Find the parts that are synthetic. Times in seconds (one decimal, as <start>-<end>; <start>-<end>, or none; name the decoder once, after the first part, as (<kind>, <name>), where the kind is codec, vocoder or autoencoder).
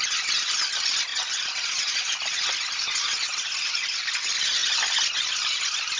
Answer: none